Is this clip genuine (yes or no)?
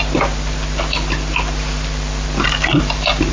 yes